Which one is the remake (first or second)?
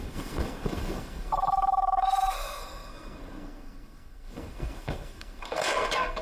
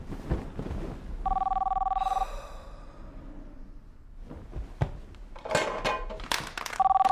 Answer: first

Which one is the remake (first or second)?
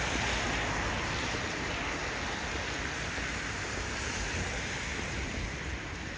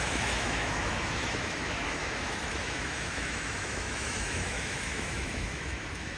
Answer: second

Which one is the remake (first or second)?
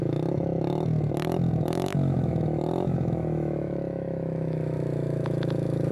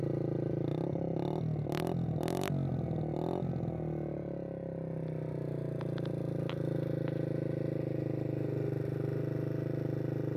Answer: first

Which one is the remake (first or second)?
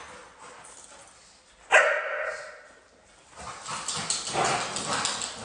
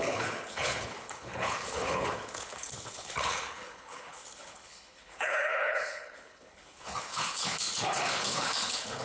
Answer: second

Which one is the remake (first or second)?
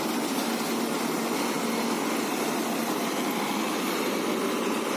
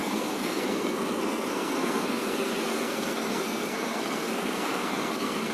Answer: second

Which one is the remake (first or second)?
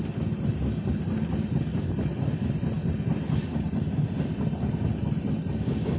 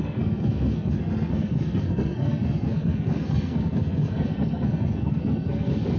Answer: second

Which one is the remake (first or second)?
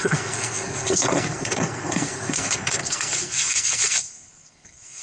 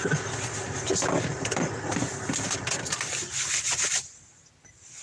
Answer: first